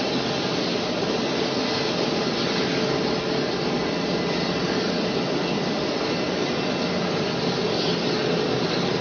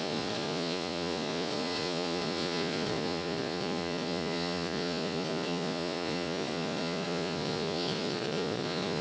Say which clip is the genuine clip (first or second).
first